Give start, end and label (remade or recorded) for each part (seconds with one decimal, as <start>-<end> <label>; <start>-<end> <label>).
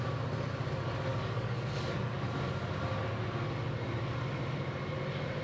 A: 0.0-1.1 recorded; 1.1-2.2 remade; 2.2-5.4 recorded